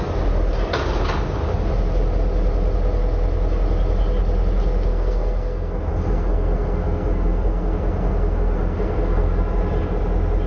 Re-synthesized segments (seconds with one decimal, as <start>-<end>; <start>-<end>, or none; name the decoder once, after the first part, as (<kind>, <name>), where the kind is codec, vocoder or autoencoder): 4.9-9.4 (codec, SNAC)